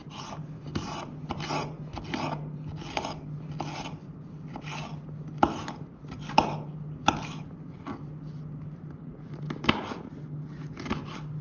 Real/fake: real